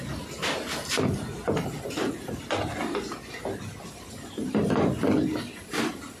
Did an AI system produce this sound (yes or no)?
no